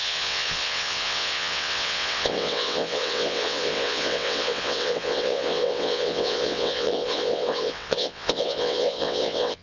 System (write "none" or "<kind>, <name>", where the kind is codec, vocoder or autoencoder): vocoder, WaveNeXt